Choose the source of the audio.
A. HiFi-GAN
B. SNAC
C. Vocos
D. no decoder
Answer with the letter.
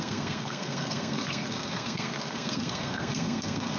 B